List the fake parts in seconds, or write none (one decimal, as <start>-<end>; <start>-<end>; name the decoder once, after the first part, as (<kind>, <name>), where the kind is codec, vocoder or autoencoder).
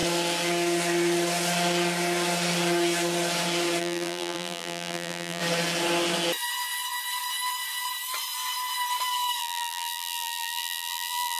3.8-5.4 (vocoder, BigVGAN v2); 9.4-11.4